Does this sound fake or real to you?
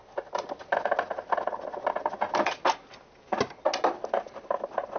real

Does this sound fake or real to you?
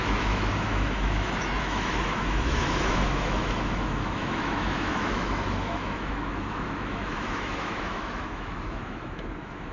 fake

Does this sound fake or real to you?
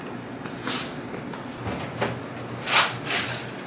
real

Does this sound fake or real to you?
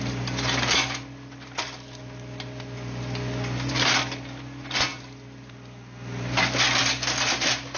real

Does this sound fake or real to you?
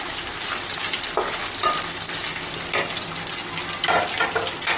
real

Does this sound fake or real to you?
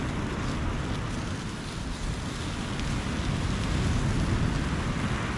real